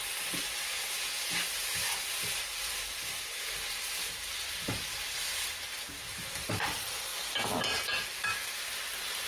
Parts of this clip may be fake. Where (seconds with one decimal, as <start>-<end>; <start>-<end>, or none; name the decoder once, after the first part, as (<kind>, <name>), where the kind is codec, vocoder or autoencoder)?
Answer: 0.0-7.1 (vocoder, BigVGAN v2); 8.5-9.3